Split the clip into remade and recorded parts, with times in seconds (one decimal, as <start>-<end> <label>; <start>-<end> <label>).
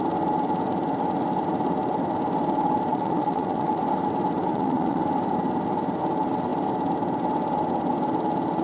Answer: 0.0-2.9 recorded; 2.9-3.8 remade; 3.8-4.5 recorded; 4.5-5.0 remade; 5.0-8.6 recorded